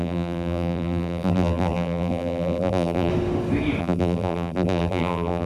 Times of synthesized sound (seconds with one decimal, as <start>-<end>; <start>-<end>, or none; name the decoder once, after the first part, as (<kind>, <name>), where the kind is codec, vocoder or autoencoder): 0.0-3.1 (vocoder, BigVGAN v2); 3.8-5.5